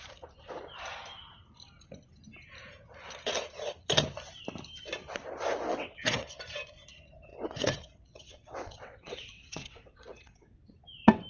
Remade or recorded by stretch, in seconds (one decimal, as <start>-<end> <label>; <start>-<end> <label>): 0.0-5.7 recorded; 5.7-6.4 remade; 6.4-7.3 recorded; 7.3-10.6 remade; 10.6-11.3 recorded